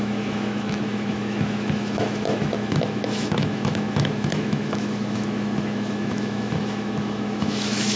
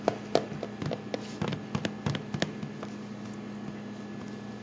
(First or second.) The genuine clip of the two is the second